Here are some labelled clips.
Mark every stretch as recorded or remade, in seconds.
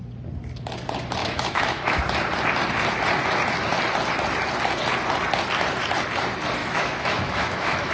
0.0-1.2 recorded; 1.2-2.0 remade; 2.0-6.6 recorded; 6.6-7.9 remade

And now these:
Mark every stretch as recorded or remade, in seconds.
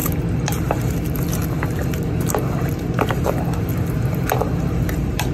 0.0-1.2 remade; 1.2-1.8 recorded; 1.8-5.3 remade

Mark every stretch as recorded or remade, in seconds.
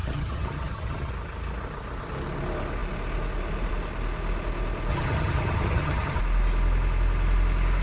0.0-1.1 remade; 1.1-4.9 recorded; 4.9-6.2 remade; 6.2-7.8 recorded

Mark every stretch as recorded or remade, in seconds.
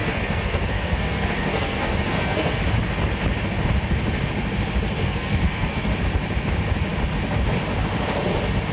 0.0-2.6 remade; 2.6-5.0 recorded; 5.0-5.9 remade; 5.9-8.7 recorded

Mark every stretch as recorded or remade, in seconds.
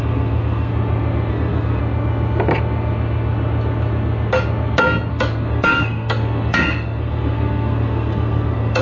0.0-0.7 remade; 0.7-1.3 recorded; 1.3-1.8 remade; 1.8-5.1 recorded; 5.1-8.8 remade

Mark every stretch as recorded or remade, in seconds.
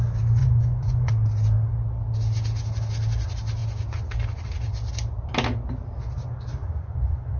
0.0-0.4 recorded; 0.4-1.1 remade; 1.1-6.6 recorded; 6.6-7.4 remade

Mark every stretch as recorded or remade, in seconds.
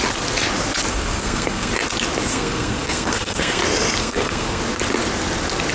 0.0-0.9 recorded; 0.9-1.7 remade; 1.7-2.3 recorded; 2.3-3.6 remade; 3.6-4.0 recorded; 4.0-4.6 remade; 4.6-5.7 recorded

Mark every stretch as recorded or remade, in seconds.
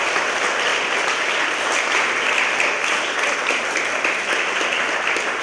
0.0-0.7 recorded; 0.7-1.4 remade; 1.4-5.4 recorded